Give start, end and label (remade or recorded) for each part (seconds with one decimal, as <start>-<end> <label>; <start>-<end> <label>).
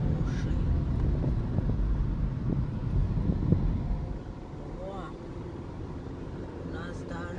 0.0-7.4 recorded